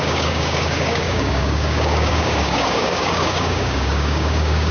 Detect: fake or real fake